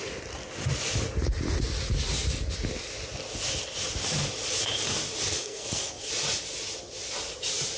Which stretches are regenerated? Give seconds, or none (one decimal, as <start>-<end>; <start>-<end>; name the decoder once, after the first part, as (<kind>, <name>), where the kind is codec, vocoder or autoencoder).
5.3-6.1 (codec, SNAC)